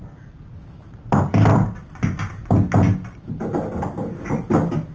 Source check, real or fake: real